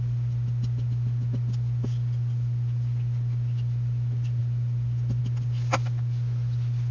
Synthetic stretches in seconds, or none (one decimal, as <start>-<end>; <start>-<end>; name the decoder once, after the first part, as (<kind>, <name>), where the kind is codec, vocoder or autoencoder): none